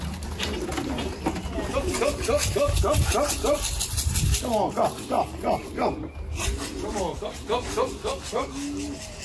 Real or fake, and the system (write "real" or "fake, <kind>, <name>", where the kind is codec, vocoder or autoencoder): real